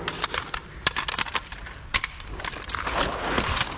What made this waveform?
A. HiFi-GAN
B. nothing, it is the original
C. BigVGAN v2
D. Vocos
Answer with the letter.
B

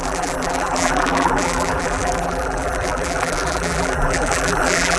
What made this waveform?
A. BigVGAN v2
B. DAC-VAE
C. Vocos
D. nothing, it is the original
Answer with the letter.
A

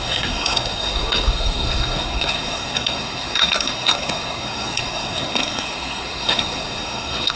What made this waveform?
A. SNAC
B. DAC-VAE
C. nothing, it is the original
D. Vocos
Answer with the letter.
A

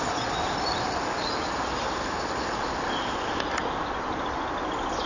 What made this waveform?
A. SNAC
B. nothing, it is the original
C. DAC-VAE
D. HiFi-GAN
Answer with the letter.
B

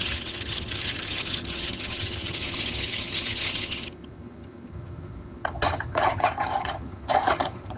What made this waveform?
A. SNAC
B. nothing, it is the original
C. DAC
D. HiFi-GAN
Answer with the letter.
D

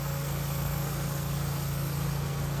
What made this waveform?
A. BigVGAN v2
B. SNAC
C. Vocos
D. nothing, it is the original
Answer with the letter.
B